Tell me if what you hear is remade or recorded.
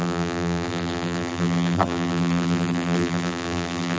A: remade